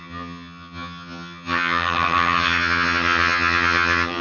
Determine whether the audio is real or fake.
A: fake